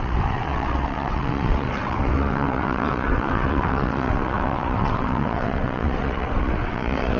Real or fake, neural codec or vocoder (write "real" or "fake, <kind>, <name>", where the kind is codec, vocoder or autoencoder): fake, vocoder, WaveNeXt